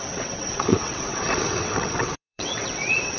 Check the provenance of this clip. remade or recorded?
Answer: remade